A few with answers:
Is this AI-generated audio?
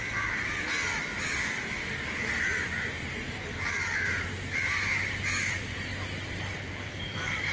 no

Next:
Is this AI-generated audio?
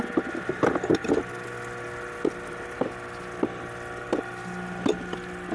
no